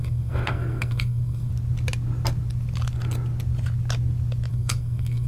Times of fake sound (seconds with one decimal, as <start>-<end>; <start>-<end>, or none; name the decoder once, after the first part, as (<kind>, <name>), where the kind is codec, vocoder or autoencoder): 0.0-1.5 (codec, SNAC); 4.5-5.3